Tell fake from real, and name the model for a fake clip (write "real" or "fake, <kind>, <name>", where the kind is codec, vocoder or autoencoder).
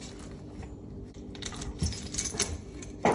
fake, vocoder, BigVGAN v2